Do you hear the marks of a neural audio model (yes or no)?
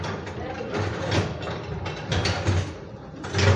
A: no